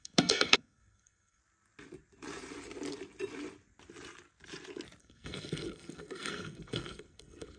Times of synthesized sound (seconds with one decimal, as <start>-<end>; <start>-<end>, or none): 0.0-1.4; 5.0-7.6